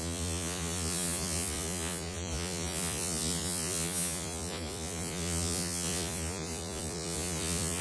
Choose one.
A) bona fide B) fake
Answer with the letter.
B